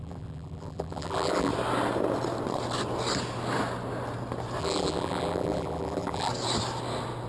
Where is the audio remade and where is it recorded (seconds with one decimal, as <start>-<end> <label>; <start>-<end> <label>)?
0.0-1.5 remade; 1.5-4.6 recorded; 4.6-6.3 remade; 6.3-7.3 recorded